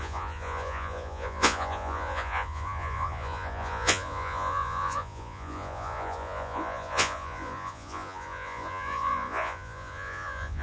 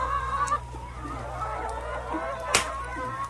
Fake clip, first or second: first